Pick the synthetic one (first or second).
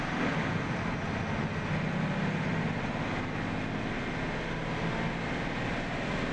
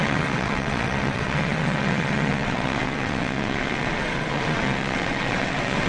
second